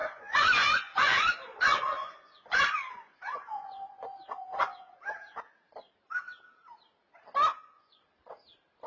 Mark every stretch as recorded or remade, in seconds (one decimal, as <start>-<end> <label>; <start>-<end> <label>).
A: 0.0-5.0 remade; 5.0-7.5 recorded; 7.5-8.0 remade; 8.0-8.9 recorded